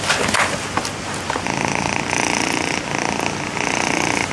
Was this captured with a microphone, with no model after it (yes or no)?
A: yes